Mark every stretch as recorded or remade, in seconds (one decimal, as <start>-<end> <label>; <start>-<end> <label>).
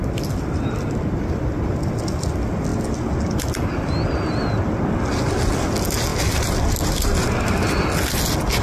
0.0-8.6 recorded